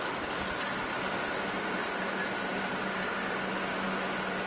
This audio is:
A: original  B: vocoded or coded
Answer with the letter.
A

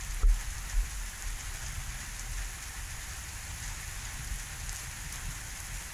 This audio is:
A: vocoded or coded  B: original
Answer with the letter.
B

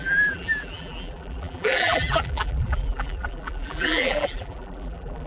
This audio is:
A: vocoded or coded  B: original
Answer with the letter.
A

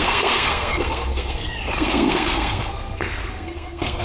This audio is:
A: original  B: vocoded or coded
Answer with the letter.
B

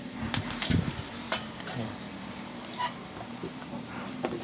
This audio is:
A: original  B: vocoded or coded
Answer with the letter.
B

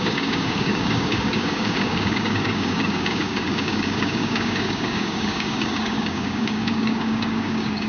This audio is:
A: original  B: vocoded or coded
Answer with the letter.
B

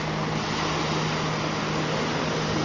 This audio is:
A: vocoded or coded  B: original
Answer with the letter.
B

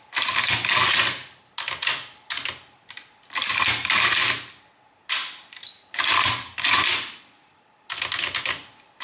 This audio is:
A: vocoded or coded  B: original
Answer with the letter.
B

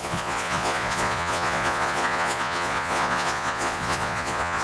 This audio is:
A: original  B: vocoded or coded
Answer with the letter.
B